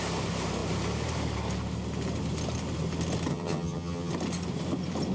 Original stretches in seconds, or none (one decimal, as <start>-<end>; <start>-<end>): 0.0-3.3; 4.1-5.1